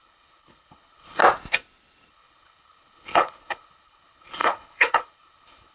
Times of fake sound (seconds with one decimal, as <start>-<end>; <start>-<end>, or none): 0.0-1.2; 2.1-5.7